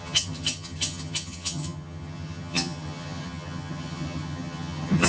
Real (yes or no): no